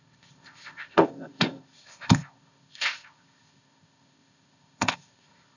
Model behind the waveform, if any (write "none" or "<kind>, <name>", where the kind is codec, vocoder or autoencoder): codec, ZipCodec